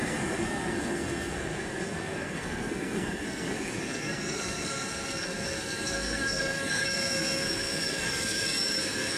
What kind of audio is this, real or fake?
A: fake